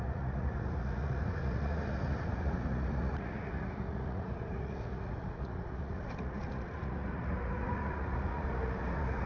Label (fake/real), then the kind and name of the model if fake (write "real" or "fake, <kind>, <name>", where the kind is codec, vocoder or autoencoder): fake, vocoder, Vocos